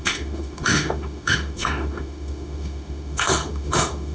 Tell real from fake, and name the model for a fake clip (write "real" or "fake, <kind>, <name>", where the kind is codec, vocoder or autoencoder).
fake, autoencoder, DAC-VAE